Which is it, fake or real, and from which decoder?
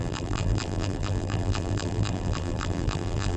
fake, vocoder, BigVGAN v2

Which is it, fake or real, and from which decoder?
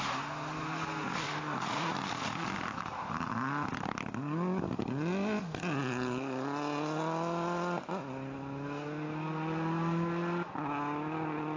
real